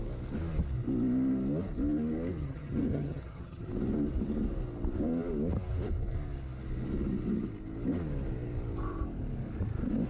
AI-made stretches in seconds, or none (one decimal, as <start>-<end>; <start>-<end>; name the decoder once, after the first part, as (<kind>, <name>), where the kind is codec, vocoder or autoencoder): 2.4-3.7 (vocoder, HiFi-GAN)